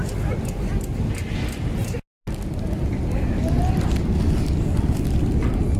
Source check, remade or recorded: recorded